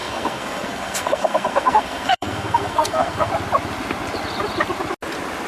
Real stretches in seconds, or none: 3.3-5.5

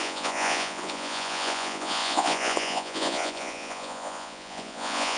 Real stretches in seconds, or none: none

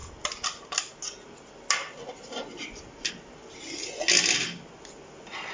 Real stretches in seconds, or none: 0.0-5.5

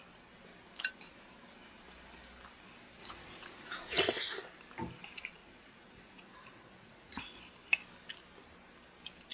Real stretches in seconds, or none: 0.0-3.0; 4.0-5.4; 7.4-9.3

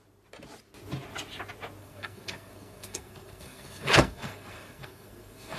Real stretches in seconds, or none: 0.0-1.8

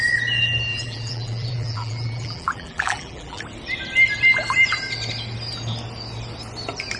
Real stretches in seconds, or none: 0.0-0.7; 3.4-7.0

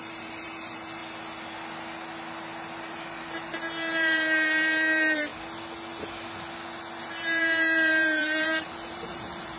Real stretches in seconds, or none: 1.0-2.8; 5.3-7.0

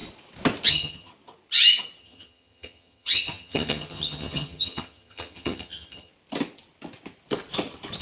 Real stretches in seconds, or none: 0.0-0.7; 1.1-2.0; 6.1-8.0